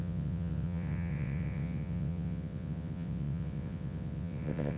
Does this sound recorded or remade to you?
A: remade